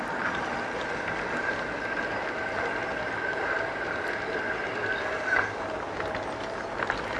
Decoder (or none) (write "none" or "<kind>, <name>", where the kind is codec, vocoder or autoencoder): none